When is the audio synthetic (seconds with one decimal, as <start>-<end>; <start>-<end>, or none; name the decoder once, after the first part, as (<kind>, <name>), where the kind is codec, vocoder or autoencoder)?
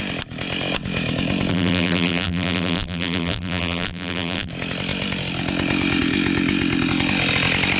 1.5-4.5 (vocoder, BigVGAN v2)